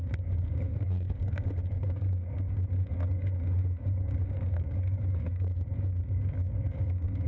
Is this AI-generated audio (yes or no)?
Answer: yes